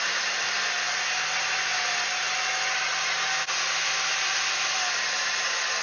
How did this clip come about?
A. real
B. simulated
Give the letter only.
A